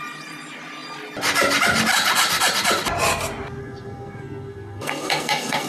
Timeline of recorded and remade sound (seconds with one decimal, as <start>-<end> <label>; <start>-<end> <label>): 0.0-3.6 recorded; 3.6-5.7 remade